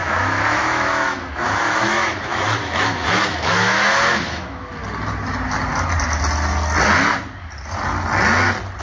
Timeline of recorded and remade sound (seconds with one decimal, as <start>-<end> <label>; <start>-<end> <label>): 0.0-4.8 remade; 4.8-8.8 recorded